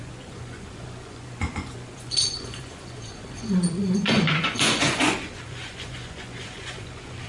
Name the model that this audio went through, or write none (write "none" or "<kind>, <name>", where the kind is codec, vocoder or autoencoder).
vocoder, Vocos